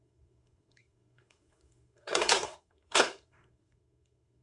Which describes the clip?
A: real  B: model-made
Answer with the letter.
B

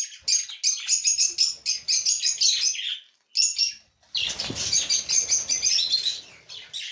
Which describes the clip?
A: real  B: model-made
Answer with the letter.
A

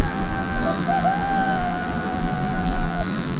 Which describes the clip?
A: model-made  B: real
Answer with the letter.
A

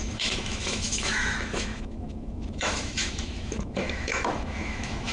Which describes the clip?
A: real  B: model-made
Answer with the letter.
B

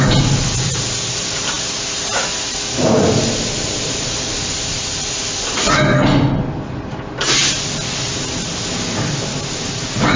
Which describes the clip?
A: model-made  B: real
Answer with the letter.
B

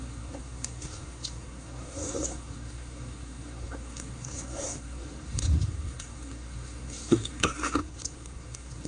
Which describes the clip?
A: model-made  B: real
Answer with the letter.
A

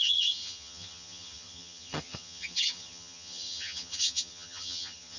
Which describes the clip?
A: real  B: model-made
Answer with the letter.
B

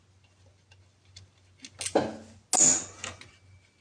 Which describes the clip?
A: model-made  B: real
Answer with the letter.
B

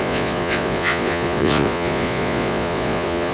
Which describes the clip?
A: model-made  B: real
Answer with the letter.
A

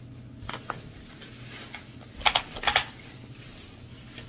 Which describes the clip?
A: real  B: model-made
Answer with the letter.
A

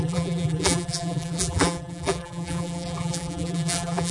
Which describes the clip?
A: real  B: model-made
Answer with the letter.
B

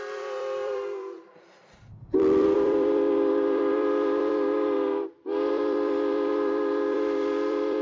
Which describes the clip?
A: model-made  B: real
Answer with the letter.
A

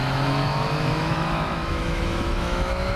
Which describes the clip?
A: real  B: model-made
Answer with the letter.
B